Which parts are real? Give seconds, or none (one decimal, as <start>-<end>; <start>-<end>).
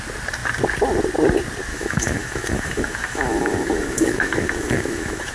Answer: 0.0-1.7